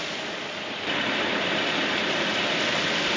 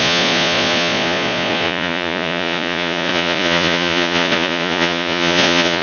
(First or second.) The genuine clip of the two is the first